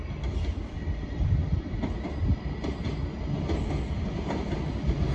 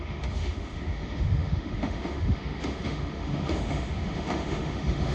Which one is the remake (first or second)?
second